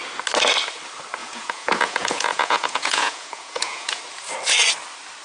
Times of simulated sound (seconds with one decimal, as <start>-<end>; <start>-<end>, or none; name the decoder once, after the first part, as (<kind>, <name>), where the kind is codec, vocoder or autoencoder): 1.2-4.0 (vocoder, Vocos)